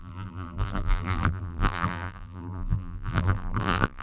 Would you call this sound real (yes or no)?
no